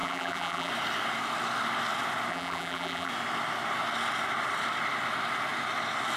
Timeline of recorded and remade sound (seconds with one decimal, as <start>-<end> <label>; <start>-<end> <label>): 0.0-0.7 remade; 0.7-2.3 recorded; 2.3-3.1 remade; 3.1-6.2 recorded